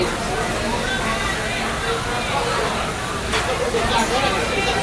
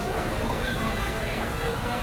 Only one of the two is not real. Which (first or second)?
second